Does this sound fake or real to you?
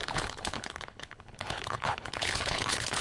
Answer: fake